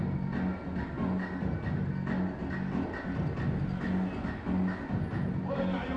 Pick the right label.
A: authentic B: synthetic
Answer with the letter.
A